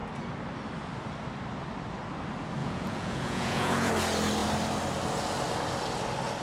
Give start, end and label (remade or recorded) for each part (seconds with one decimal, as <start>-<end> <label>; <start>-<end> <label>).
0.0-2.6 recorded; 2.6-3.9 remade; 3.9-6.4 recorded